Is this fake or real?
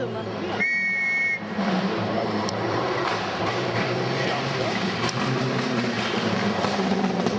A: fake